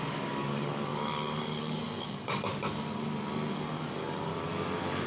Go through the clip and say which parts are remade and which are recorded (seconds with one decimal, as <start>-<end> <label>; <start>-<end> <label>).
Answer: 0.0-2.5 remade; 2.5-3.5 recorded; 3.5-4.3 remade; 4.3-5.1 recorded